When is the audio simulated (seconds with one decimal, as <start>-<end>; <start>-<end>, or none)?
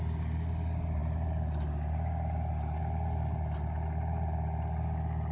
none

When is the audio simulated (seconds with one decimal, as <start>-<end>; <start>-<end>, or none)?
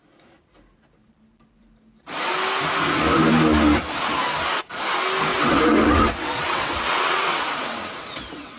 5.3-8.6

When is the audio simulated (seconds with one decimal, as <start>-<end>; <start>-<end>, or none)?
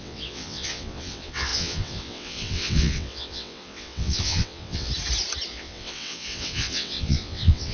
0.0-4.9; 5.5-7.7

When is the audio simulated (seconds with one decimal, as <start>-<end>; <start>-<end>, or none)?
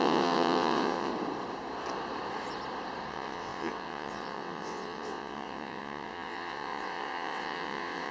0.0-1.1; 3.1-8.1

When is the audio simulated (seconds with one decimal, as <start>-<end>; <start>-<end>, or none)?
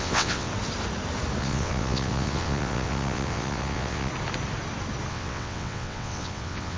0.0-0.5; 1.4-4.1; 5.1-6.8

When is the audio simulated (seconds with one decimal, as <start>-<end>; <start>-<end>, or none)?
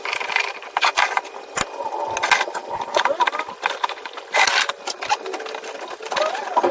none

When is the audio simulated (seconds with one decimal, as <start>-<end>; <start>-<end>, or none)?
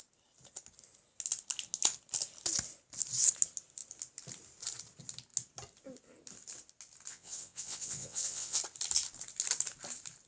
7.1-8.6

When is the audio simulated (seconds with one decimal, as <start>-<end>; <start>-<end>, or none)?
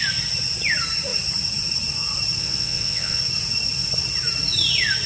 2.4-3.2